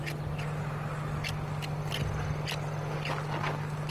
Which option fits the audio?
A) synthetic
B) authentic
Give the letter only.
B